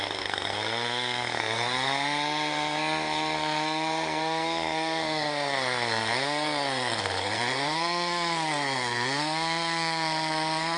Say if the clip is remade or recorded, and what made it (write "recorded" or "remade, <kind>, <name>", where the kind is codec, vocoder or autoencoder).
remade, codec, SNAC